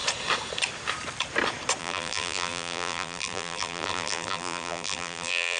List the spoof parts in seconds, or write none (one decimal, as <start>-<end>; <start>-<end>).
1.8-5.6